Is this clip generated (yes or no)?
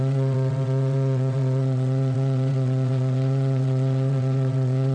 yes